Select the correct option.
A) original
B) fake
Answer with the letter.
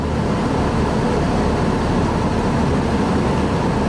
A